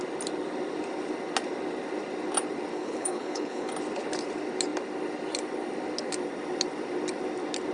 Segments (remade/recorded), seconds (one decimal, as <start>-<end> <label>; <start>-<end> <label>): 0.0-2.7 recorded; 2.7-3.7 remade; 3.7-7.7 recorded